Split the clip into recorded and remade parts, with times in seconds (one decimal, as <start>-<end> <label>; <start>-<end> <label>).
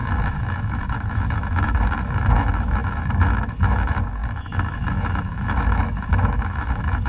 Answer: 0.0-7.1 remade